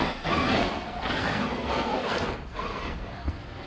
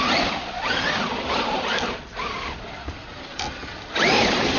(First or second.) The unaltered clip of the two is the second